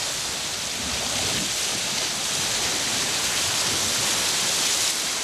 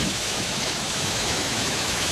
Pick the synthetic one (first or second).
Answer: second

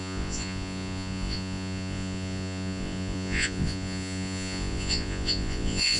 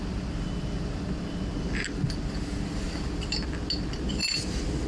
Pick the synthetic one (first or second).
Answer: first